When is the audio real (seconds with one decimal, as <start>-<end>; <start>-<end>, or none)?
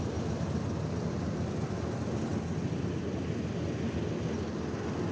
0.0-5.1